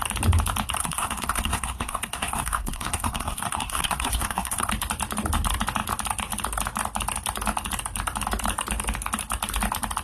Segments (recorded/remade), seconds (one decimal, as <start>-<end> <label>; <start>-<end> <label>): 0.0-0.8 recorded; 0.8-4.7 remade; 4.7-10.0 recorded